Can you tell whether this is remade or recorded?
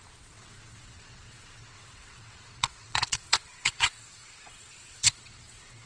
remade